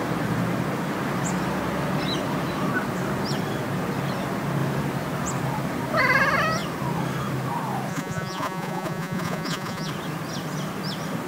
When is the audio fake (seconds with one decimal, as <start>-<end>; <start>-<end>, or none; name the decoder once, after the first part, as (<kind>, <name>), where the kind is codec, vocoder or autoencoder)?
7.9-9.9 (vocoder, Vocos)